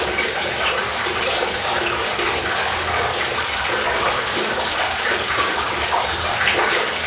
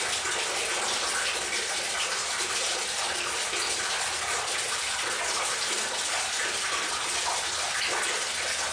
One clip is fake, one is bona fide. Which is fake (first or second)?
first